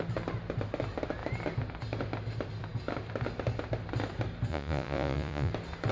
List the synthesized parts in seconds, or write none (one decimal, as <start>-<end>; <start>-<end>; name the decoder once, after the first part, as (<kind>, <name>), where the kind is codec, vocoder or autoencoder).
4.5-5.5 (vocoder, Vocos)